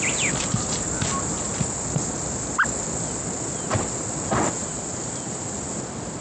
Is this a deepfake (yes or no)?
no